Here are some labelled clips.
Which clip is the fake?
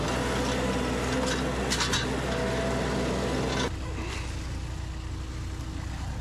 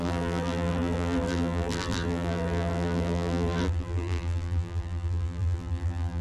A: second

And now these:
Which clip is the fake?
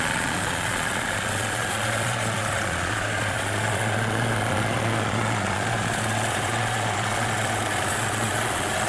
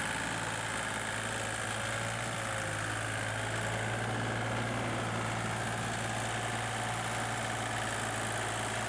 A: first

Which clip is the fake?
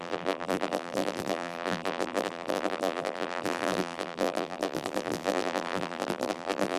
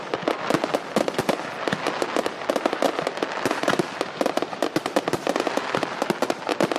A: first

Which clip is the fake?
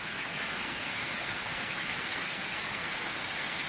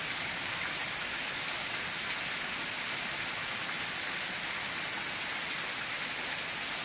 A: first